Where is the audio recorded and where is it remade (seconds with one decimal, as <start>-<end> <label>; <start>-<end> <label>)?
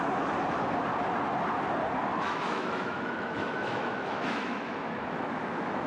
0.0-2.1 recorded; 2.1-5.9 remade